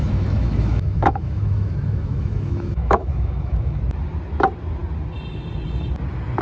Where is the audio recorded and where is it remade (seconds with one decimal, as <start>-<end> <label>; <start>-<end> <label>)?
0.0-3.8 remade; 3.8-6.4 recorded